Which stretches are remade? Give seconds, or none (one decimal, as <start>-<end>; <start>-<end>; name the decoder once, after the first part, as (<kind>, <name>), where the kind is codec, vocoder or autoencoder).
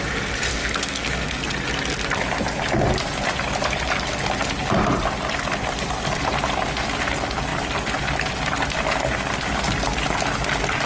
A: 0.5-1.5 (codec, SNAC)